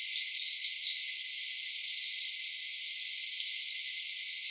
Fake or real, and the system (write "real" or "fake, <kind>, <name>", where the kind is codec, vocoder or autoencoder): real